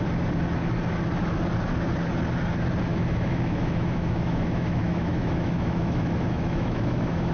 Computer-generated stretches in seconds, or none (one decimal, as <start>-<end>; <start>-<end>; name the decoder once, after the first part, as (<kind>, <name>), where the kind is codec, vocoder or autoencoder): 2.9-7.3 (autoencoder, DAC-VAE)